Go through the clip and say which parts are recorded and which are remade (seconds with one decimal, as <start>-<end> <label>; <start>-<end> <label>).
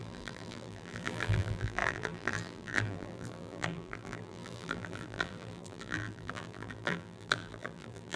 0.0-8.2 remade